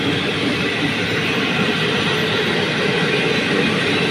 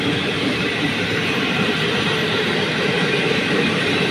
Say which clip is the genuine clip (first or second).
first